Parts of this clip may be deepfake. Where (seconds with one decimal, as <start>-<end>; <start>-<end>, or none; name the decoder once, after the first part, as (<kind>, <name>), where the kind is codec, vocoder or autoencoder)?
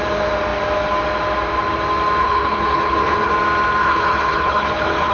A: 2.2-3.3 (codec, HILCodec); 3.8-5.1